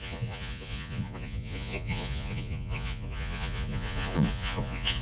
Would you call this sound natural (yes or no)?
no